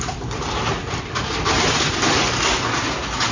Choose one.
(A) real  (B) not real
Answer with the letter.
A